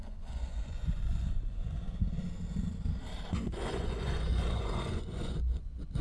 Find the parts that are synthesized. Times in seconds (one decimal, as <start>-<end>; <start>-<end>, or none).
0.0-2.0; 3.3-6.0